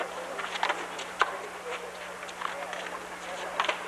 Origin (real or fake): real